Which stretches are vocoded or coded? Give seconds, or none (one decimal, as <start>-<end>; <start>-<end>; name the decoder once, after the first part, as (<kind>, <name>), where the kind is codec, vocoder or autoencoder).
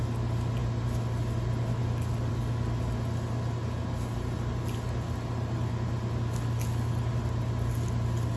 none